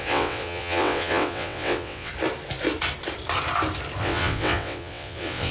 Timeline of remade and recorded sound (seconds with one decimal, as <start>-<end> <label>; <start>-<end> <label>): 0.0-2.1 remade; 2.1-4.0 recorded; 4.0-5.5 remade